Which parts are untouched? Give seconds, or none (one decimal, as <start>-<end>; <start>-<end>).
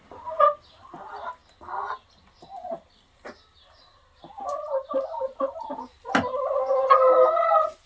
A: 0.0-7.9